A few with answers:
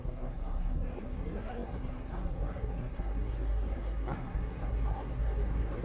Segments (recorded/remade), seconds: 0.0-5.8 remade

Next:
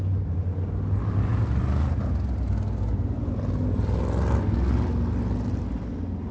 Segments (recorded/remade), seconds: 0.0-6.3 recorded

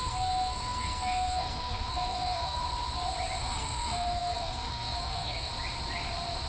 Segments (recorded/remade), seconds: 0.0-2.6 remade; 2.6-3.4 recorded; 3.4-5.5 remade; 5.5-6.5 recorded

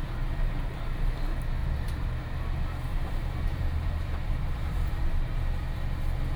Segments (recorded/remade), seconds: 0.0-1.6 recorded; 1.6-2.2 remade; 2.2-2.9 recorded; 2.9-5.4 remade; 5.4-6.4 recorded